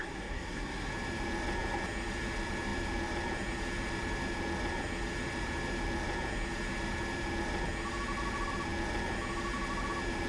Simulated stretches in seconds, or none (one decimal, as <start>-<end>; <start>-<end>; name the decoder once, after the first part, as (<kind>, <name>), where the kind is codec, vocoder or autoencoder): 0.0-0.9 (codec, SNAC)